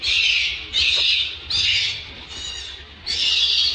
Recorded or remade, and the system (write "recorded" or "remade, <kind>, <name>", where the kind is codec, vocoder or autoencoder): recorded